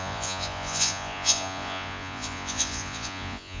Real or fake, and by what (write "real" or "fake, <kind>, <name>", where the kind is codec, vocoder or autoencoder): fake, vocoder, Vocos